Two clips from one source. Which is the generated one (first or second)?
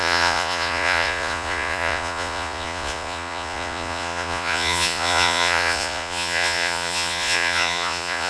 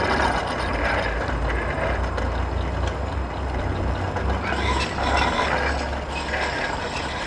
first